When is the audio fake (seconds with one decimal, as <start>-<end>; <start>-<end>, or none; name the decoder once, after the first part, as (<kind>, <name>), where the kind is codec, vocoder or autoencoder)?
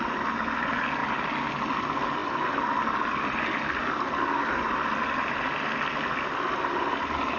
none